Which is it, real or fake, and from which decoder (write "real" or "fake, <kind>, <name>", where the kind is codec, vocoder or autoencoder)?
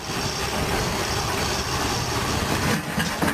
real